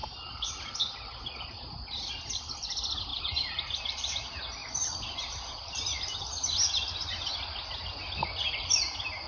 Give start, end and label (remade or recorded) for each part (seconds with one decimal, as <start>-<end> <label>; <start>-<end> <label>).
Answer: 0.0-0.7 remade; 0.7-3.1 recorded; 3.1-4.1 remade; 4.1-9.3 recorded

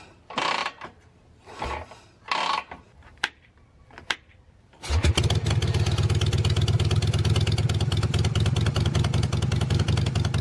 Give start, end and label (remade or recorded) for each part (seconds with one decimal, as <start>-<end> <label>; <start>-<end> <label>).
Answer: 0.0-10.4 recorded

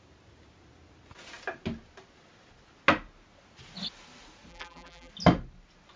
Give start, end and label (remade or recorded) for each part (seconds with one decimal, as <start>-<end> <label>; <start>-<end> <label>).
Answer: 0.0-4.5 recorded; 4.5-5.1 remade; 5.1-6.0 recorded

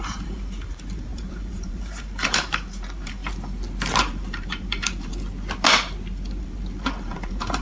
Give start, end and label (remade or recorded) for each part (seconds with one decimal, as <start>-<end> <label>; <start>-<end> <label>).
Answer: 0.0-3.2 remade; 3.2-4.0 recorded; 4.0-5.1 remade; 5.1-6.4 recorded; 6.4-7.6 remade

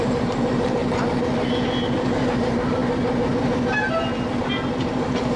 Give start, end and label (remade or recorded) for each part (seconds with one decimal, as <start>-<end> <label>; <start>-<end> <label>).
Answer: 0.0-0.8 remade; 0.8-1.9 recorded; 1.9-2.8 remade; 2.8-4.3 recorded; 4.3-5.4 remade